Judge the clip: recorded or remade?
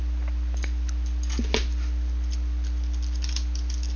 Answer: recorded